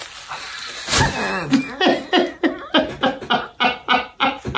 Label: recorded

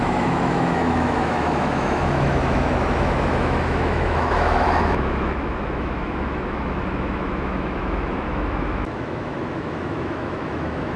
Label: remade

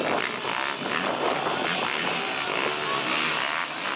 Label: recorded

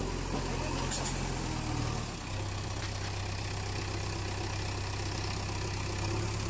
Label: recorded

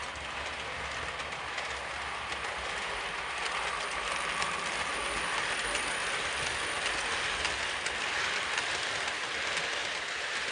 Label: recorded